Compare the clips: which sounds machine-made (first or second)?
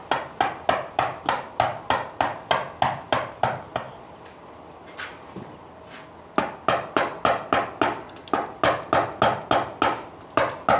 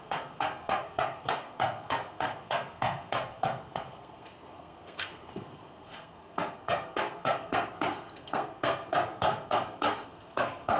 second